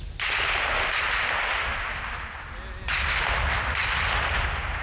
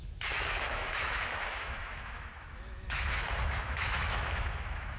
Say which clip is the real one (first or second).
first